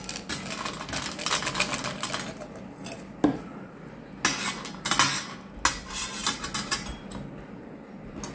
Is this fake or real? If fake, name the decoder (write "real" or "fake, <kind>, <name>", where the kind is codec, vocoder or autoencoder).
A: real